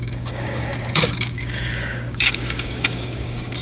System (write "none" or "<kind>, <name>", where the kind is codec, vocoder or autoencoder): codec, DAC